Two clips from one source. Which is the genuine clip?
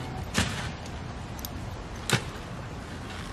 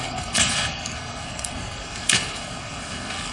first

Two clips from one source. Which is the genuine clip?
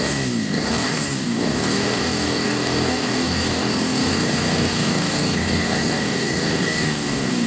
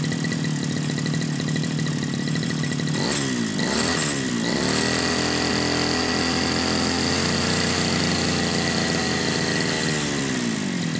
second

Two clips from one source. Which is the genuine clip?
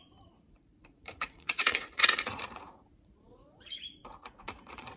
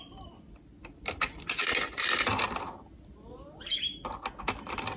second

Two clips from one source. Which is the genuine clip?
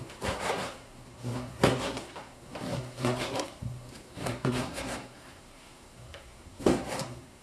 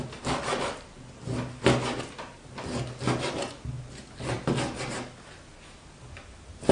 second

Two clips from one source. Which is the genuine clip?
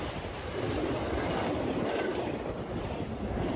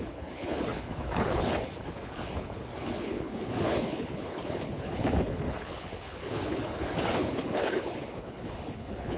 first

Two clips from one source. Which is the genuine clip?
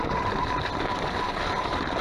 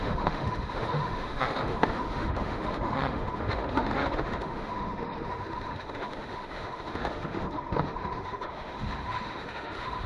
first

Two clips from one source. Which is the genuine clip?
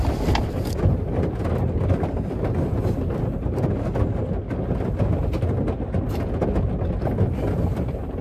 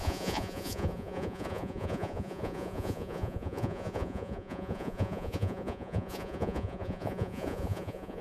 first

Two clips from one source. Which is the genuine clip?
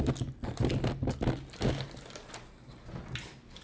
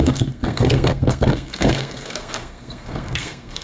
first